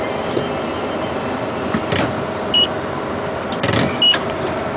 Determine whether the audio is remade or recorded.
recorded